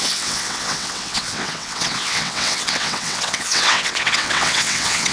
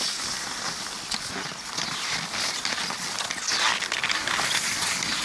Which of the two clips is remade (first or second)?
first